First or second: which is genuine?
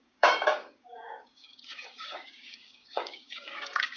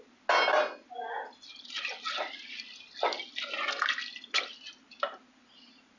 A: second